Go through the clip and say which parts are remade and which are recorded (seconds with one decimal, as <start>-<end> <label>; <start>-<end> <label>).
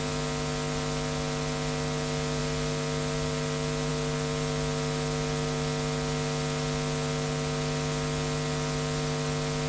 0.0-9.7 recorded